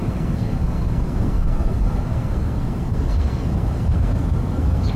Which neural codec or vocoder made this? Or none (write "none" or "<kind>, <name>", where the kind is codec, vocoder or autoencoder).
codec, SNAC